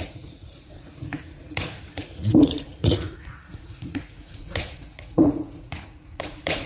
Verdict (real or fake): fake